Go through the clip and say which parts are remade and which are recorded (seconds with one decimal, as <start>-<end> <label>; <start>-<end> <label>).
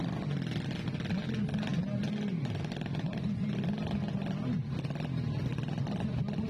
0.0-6.5 recorded